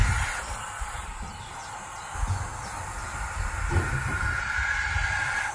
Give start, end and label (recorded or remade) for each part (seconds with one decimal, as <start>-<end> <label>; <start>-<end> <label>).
0.0-1.5 remade; 1.5-5.5 recorded